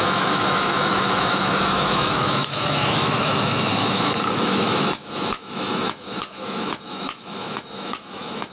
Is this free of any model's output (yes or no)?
no